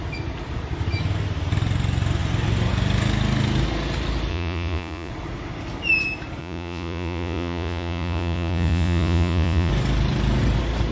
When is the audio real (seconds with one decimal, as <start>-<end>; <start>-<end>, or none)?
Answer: 0.0-4.3; 5.1-6.4; 9.7-10.9

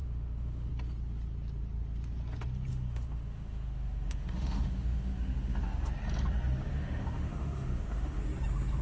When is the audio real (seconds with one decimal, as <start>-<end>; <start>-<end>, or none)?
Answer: 0.7-2.7; 5.9-6.7; 8.2-8.8

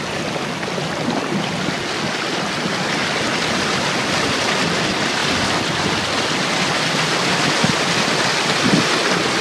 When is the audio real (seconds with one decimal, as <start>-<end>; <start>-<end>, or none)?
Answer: 0.0-9.4

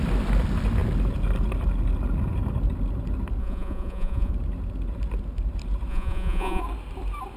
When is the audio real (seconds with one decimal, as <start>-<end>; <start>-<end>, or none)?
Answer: 0.0-3.4; 4.3-5.9; 6.6-7.4